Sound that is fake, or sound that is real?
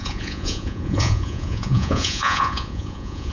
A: fake